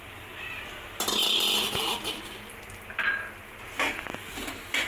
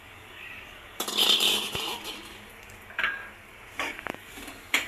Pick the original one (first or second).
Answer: first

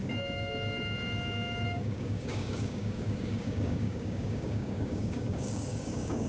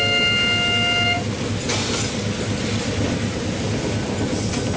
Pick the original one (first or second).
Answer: second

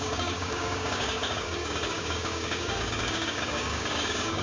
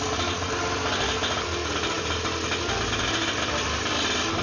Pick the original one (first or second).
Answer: second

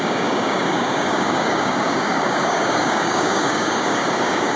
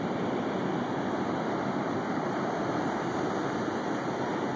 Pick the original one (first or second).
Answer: second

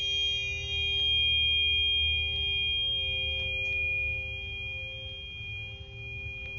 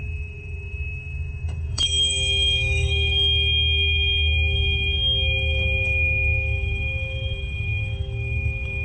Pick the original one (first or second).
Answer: first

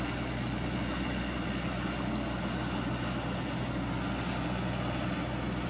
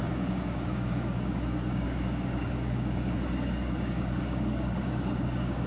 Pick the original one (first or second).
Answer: first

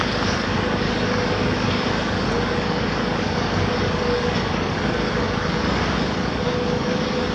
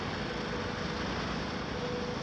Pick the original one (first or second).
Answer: second